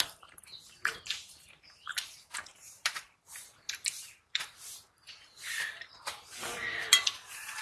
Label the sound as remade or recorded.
remade